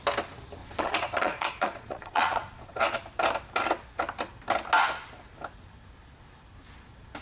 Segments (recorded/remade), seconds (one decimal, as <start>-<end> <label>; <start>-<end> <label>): 0.0-0.6 recorded; 0.6-2.8 remade; 2.8-7.2 recorded